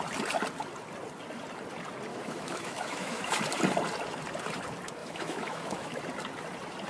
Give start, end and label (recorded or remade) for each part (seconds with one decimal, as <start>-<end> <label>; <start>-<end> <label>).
0.0-2.1 recorded; 2.1-3.4 remade; 3.4-5.0 recorded; 5.0-6.0 remade; 6.0-6.9 recorded